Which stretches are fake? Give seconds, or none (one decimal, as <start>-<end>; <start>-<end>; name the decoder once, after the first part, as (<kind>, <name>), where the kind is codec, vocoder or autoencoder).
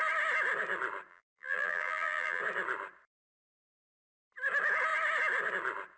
1.1-2.4 (vocoder, BigVGAN v2)